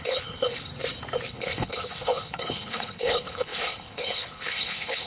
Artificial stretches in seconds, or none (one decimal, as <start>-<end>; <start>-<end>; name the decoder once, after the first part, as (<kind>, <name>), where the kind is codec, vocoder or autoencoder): 0.0-0.7 (codec, HILCodec); 1.3-5.1